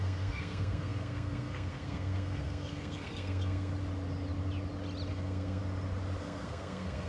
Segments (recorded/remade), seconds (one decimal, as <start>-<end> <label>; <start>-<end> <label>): 0.0-3.7 remade; 3.7-5.1 recorded; 5.1-5.6 remade; 5.6-6.2 recorded; 6.2-7.1 remade